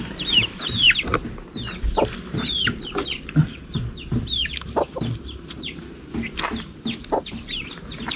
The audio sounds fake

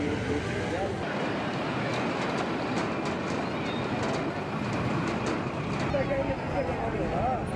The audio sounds real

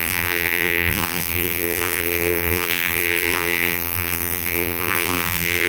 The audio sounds fake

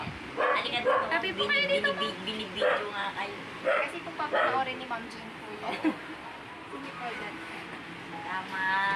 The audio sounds real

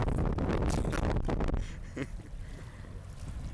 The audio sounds real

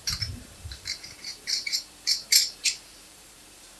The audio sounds fake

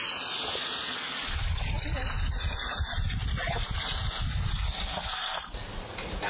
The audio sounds real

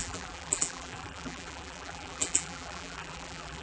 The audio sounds fake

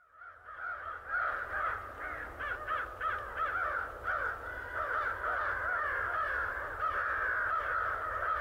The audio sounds real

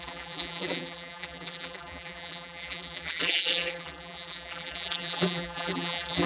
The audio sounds fake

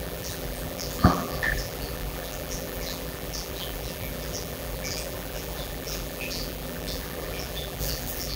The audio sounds fake